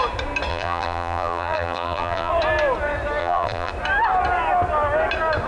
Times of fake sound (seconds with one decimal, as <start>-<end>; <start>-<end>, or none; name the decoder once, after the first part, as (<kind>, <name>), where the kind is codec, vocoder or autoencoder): 0.5-2.3 (vocoder, BigVGAN v2); 3.2-3.7